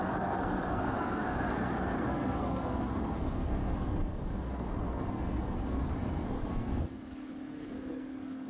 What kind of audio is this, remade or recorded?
remade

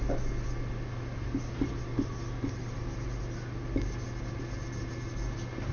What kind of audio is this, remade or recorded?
recorded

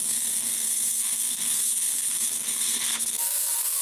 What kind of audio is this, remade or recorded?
remade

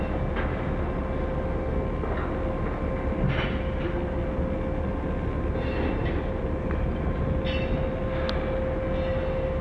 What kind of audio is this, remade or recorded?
recorded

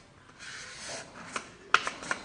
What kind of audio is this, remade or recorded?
recorded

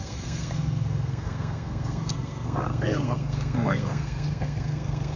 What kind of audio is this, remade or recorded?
remade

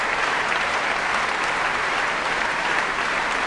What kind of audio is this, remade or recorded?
recorded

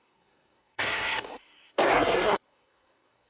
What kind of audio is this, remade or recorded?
remade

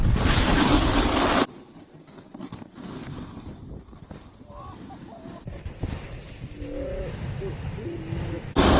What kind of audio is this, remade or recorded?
recorded